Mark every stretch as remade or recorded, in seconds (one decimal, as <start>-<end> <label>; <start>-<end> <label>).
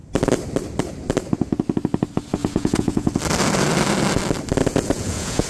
0.0-2.4 recorded; 2.4-3.1 remade; 3.1-4.6 recorded; 4.6-5.5 remade